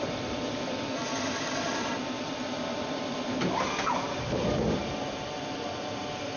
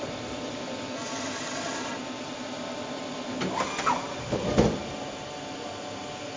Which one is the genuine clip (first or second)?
second